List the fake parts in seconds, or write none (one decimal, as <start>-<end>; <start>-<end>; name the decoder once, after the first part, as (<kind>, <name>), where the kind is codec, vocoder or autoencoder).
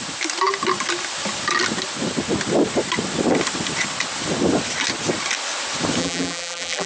6.0-6.9 (vocoder, BigVGAN v2)